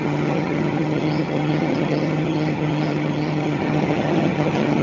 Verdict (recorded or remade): remade